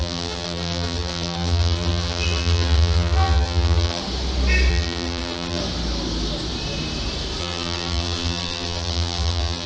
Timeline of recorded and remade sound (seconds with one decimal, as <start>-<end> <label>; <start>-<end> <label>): 0.0-4.0 remade; 4.0-4.7 recorded; 4.7-5.6 remade; 5.6-7.4 recorded; 7.4-9.7 remade